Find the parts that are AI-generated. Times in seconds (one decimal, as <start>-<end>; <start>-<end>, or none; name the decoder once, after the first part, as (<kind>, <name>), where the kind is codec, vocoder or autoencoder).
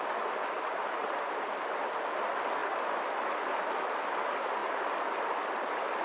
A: none